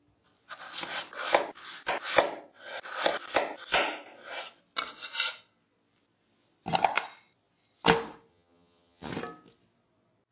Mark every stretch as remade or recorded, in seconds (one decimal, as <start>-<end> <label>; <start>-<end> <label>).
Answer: 0.0-8.3 recorded; 8.3-9.1 remade; 9.1-10.3 recorded